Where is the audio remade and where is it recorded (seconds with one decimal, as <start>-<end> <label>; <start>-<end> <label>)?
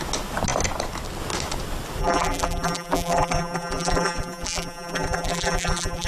0.0-2.0 recorded; 2.0-6.1 remade